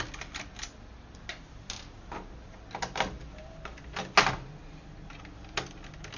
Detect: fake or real real